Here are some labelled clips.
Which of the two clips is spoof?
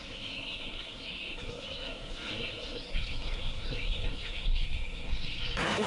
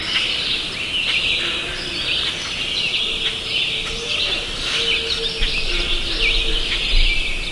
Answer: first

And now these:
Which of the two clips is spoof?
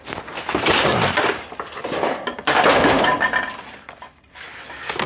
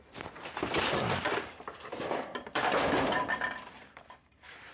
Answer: second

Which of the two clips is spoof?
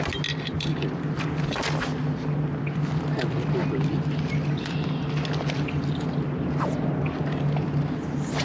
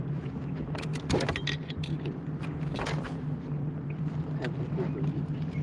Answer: second